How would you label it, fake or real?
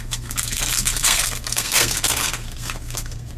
fake